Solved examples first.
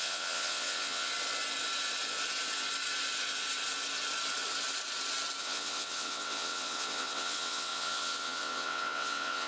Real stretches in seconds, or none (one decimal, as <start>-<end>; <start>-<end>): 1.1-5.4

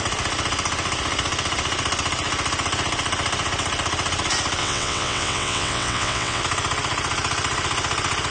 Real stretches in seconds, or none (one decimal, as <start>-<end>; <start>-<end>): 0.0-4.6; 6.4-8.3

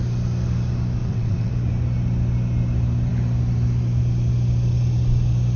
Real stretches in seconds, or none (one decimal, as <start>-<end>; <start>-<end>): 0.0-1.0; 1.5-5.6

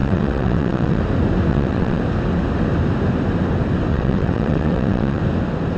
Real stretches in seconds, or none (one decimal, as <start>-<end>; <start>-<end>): 1.0-1.5; 2.0-3.9; 5.2-5.8

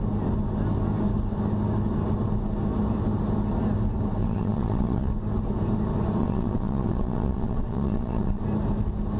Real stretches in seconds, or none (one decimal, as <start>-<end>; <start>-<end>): 0.0-4.2; 5.1-6.2; 8.4-9.2

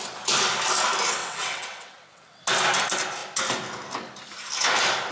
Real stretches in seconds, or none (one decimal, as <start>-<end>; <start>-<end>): 0.0-1.2; 2.4-5.1

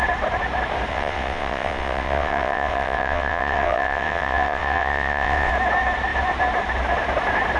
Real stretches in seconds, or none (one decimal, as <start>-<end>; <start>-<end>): 0.0-0.9; 5.5-7.6